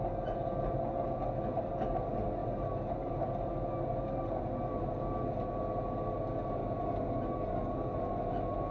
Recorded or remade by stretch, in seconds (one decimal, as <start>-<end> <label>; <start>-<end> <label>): 0.0-8.7 recorded